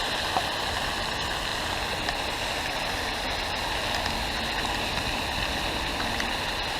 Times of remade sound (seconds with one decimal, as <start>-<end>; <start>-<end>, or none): none